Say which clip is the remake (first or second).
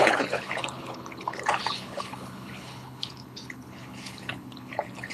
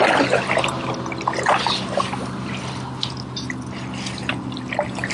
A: first